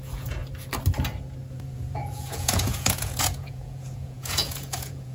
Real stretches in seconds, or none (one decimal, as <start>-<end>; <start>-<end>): 0.4-1.5